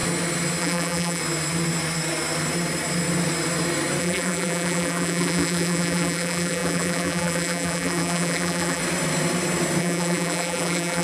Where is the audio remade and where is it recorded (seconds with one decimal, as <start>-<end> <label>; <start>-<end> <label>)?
0.0-0.6 recorded; 0.6-1.2 remade; 1.2-4.0 recorded; 4.0-8.8 remade; 8.8-9.8 recorded; 9.8-11.0 remade